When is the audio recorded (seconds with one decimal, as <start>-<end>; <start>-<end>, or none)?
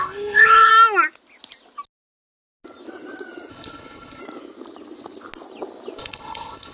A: 0.7-3.5; 4.2-6.0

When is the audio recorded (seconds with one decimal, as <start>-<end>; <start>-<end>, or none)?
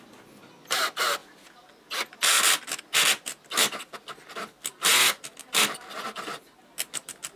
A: 0.0-7.4